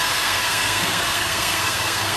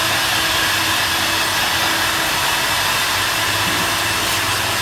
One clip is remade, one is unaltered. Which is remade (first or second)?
first